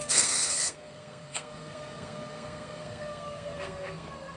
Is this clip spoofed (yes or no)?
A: yes